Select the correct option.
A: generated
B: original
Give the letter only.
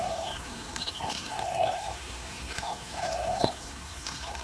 A